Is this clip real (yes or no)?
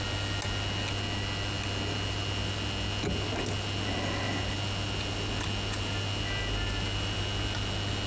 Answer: yes